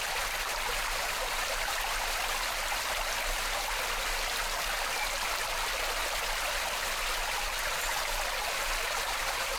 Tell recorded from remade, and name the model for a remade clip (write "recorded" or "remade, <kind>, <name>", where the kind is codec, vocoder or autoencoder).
recorded